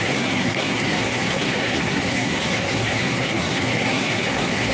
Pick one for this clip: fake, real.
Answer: fake